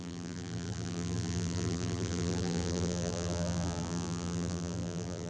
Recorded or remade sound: remade